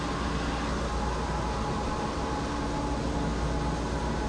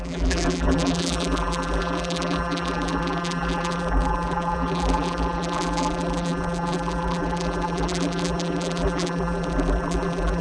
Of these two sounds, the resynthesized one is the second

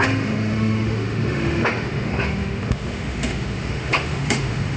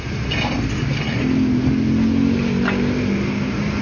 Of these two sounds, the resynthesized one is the first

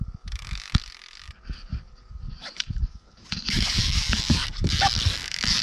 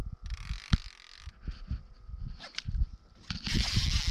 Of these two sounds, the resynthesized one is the first